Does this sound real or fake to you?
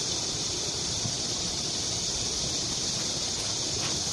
real